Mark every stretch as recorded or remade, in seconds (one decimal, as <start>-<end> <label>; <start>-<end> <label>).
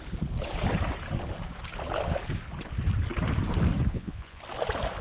0.0-3.9 recorded; 3.9-4.4 remade; 4.4-5.0 recorded